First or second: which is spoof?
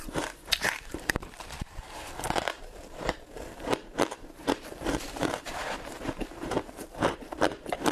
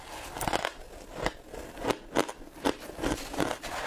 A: first